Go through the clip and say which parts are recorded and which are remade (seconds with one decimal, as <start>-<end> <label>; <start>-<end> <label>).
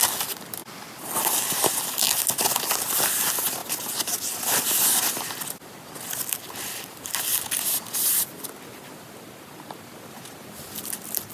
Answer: 0.0-11.3 recorded